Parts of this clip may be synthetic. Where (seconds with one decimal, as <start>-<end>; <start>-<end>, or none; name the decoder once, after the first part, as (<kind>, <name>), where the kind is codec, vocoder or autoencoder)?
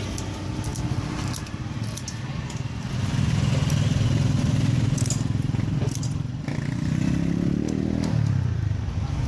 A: none